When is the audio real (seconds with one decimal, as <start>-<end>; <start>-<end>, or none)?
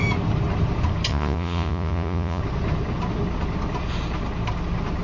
0.0-1.1; 2.4-5.0